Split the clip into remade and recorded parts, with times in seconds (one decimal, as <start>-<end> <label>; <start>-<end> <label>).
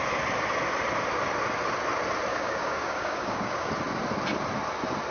0.0-2.3 recorded; 2.3-3.7 remade; 3.7-5.1 recorded